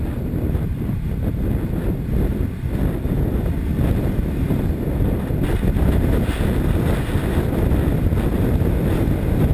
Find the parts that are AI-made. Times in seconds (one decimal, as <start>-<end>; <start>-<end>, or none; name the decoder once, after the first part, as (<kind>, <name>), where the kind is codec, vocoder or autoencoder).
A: none